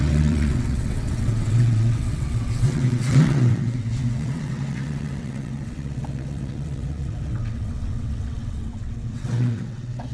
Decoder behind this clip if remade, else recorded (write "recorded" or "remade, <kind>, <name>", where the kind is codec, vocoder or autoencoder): remade, vocoder, WaveNeXt